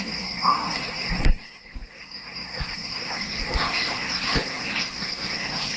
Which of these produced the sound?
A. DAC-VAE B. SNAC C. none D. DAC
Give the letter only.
B